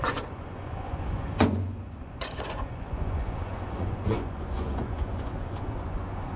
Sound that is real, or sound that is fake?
fake